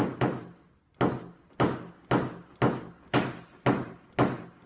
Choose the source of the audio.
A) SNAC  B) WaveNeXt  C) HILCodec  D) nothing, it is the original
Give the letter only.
D